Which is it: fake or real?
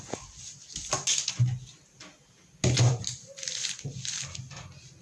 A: real